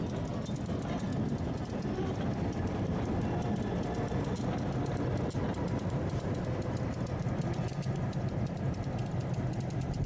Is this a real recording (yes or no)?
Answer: yes